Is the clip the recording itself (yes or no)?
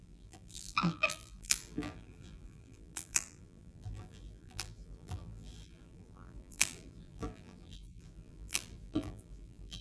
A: no